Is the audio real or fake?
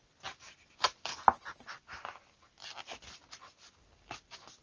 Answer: real